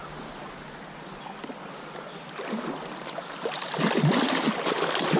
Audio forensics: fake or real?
real